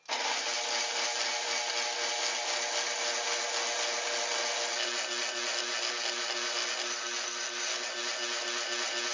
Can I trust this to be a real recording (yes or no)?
yes